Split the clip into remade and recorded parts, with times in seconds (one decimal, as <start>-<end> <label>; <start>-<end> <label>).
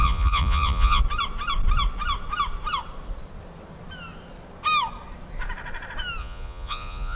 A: 0.0-1.0 remade; 1.0-6.2 recorded; 6.2-7.2 remade